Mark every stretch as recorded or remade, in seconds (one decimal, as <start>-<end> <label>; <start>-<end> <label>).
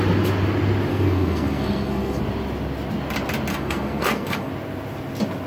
0.0-0.9 recorded; 0.9-2.2 remade; 2.2-3.5 recorded; 3.5-4.5 remade; 4.5-5.5 recorded